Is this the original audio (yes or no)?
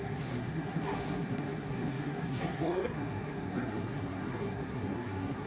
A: no